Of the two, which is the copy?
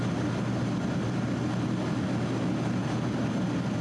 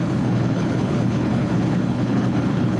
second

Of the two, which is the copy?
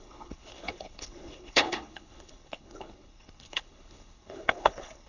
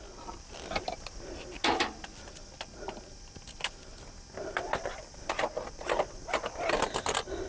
first